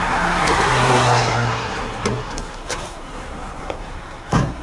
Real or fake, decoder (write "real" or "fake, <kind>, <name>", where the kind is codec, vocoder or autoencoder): fake, codec, SNAC